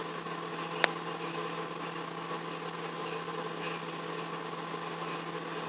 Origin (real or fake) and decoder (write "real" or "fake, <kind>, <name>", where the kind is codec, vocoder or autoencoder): real